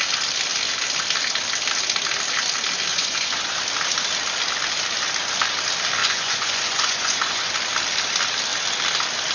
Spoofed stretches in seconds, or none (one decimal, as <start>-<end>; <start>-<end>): 2.9-3.6; 6.0-7.5